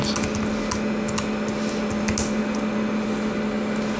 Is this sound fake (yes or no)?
no